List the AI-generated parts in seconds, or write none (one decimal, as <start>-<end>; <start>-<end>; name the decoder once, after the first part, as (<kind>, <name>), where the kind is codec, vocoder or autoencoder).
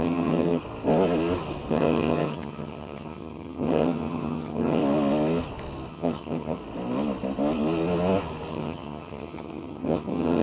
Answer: 0.0-0.6 (vocoder, HiFi-GAN); 1.7-4.8; 5.9-6.6; 8.5-10.4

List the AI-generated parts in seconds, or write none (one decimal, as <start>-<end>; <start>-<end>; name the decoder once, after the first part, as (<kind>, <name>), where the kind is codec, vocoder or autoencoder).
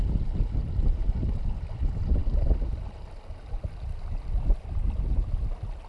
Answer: none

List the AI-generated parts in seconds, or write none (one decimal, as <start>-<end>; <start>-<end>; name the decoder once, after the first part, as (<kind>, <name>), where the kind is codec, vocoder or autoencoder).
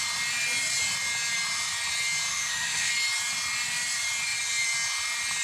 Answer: 2.3-2.9 (autoencoder, DAC-VAE)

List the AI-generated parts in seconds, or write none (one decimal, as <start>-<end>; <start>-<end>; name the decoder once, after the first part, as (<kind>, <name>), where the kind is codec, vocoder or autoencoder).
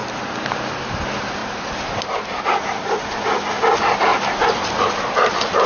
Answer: 1.4-2.4 (vocoder, BigVGAN v2); 4.1-5.7